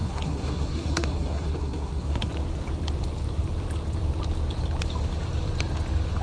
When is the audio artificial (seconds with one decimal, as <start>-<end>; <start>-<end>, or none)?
0.0-2.3